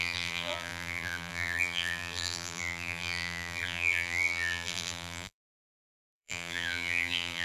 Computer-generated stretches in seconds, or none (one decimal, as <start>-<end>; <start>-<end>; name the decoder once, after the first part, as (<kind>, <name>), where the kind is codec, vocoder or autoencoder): 0.0-7.4 (vocoder, BigVGAN v2)